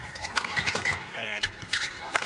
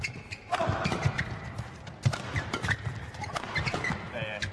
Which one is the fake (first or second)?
first